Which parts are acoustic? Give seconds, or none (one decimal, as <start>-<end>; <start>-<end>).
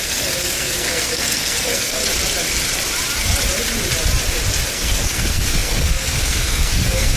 2.0-4.7